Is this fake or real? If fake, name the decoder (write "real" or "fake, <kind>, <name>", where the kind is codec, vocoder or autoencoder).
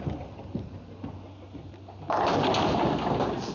real